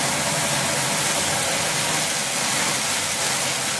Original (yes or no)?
yes